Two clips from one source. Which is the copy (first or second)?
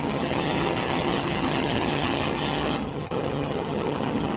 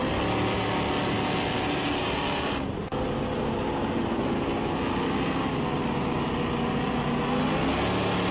first